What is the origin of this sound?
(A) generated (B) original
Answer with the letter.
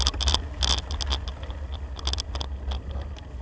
B